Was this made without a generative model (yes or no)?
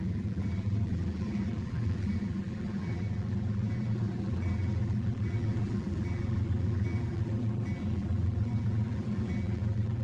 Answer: no